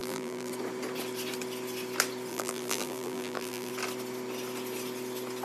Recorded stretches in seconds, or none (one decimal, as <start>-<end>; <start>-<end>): 0.5-2.3; 3.7-5.4